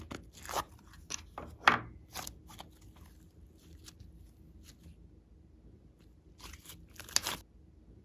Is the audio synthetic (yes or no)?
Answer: no